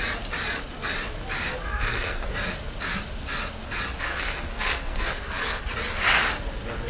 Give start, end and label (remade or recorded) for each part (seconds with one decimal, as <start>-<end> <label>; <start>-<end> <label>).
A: 0.0-1.7 recorded; 1.7-2.3 remade; 2.3-4.1 recorded; 4.1-5.6 remade; 5.6-6.9 recorded